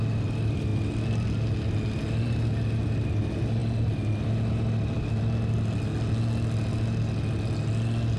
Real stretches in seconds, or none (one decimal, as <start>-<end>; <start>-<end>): 0.0-8.2